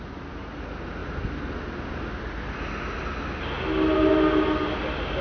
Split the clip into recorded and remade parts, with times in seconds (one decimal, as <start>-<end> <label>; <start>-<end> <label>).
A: 0.0-5.2 recorded